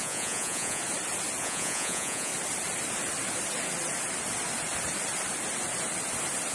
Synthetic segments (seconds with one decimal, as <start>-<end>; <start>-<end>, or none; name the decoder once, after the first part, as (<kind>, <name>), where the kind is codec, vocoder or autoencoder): 0.0-0.8 (vocoder, Vocos); 1.4-2.3